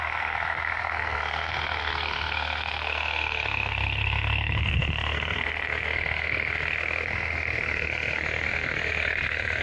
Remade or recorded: remade